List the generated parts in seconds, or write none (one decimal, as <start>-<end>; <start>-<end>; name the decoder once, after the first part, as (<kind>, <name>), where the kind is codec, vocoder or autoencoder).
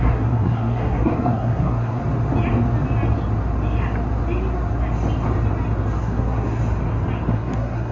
0.0-2.0 (codec, SNAC); 6.0-6.6; 7.3-7.9